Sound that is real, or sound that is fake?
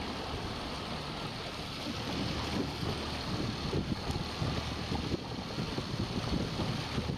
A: real